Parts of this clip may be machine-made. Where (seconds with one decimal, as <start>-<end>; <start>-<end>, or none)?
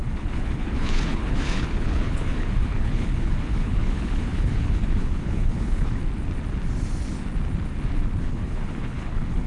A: 0.0-6.0; 8.2-9.5